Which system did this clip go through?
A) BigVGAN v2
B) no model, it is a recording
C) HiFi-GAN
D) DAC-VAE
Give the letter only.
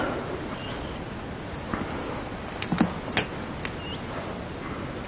B